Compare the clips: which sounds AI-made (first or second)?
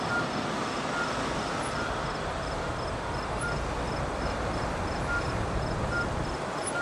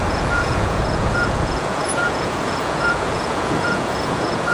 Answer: second